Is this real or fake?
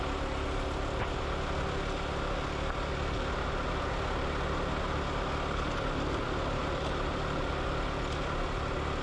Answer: real